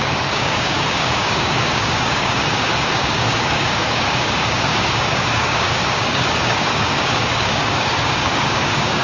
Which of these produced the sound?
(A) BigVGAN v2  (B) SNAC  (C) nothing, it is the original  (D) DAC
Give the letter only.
D